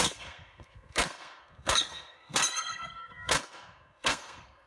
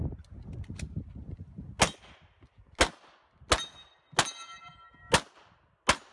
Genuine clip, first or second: second